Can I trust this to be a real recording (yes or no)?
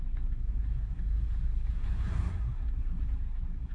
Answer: no